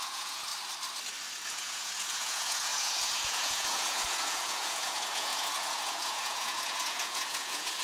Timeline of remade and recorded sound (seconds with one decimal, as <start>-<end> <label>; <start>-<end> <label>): 0.0-0.5 remade; 0.5-1.5 recorded; 1.5-7.8 remade